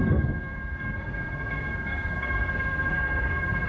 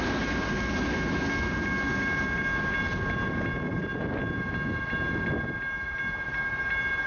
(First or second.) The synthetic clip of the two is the first